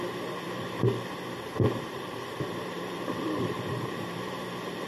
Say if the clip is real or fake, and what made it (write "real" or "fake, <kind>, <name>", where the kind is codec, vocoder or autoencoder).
fake, vocoder, BigVGAN v2